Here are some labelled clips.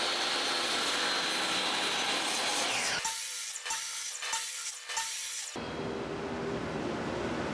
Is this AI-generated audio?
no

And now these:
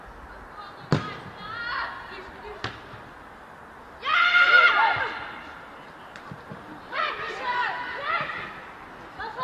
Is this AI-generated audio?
no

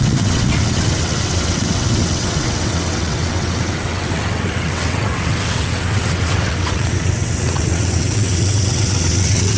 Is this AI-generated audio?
yes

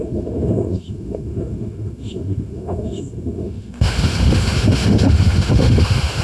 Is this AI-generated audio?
yes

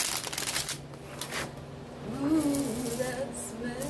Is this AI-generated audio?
no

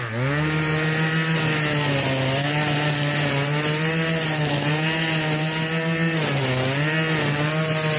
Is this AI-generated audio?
no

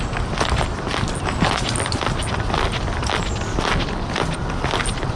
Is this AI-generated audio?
no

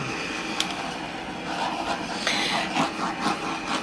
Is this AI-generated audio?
no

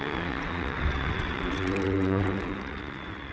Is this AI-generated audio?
yes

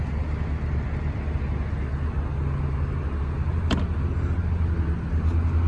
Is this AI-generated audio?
no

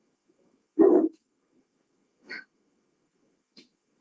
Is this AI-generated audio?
yes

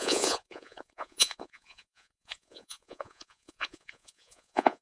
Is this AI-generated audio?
yes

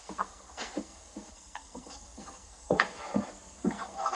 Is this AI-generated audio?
yes